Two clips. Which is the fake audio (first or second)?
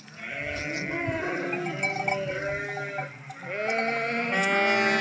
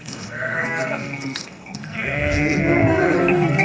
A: second